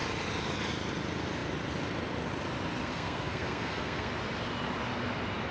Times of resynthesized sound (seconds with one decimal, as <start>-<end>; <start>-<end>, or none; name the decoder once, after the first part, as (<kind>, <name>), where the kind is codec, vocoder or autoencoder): 2.8-4.1 (codec, SNAC)